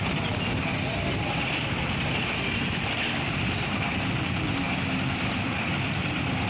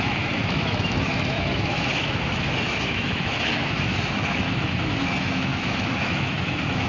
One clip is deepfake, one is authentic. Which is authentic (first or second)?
first